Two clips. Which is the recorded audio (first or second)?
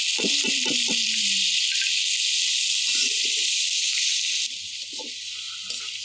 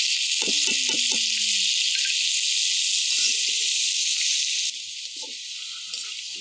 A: second